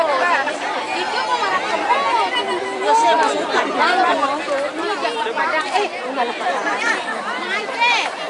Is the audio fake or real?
fake